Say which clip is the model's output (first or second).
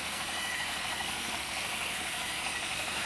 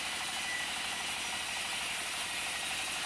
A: first